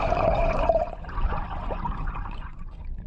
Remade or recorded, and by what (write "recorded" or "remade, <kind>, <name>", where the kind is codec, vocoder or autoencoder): remade, vocoder, Vocos